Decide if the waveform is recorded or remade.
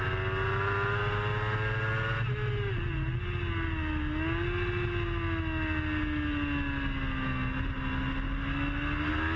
recorded